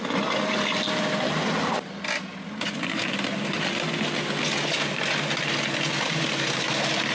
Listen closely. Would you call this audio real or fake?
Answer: real